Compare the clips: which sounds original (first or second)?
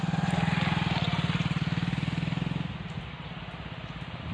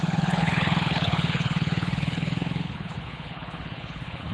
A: first